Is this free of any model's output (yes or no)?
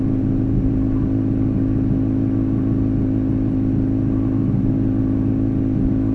yes